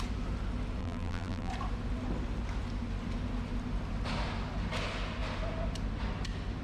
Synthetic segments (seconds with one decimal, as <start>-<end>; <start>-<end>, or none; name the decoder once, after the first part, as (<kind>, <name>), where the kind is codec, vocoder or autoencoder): 0.8-1.5 (vocoder, BigVGAN v2)